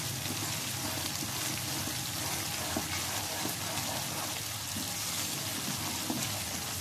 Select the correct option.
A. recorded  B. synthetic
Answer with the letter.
A